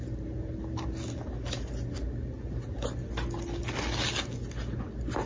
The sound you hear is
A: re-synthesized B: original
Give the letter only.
B